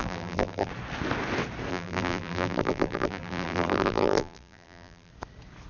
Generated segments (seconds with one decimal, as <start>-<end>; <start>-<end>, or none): 0.0-0.7; 1.7-5.1